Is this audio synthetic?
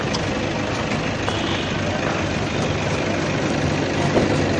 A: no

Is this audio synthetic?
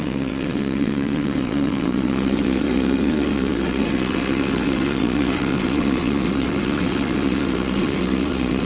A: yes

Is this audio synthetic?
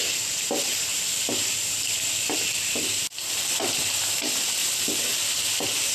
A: yes